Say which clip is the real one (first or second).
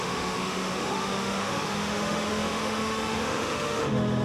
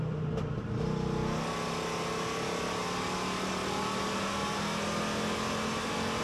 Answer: second